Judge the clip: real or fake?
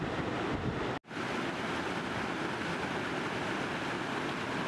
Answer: real